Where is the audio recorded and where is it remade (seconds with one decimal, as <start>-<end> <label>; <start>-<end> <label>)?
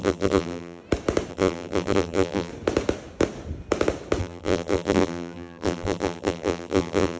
0.0-0.8 remade; 0.8-1.3 recorded; 1.3-2.5 remade; 2.5-4.2 recorded; 4.2-7.2 remade